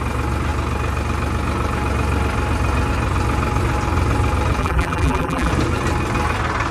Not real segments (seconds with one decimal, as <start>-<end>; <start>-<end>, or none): 4.6-5.5